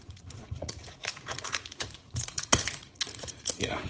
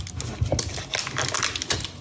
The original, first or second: second